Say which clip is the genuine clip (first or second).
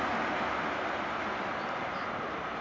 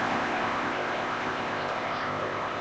first